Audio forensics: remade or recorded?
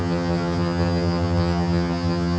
remade